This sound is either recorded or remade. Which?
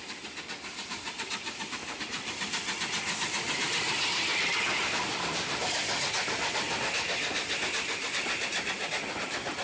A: remade